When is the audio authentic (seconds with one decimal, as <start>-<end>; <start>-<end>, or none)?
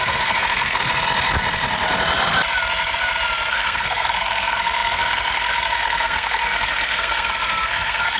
0.9-3.5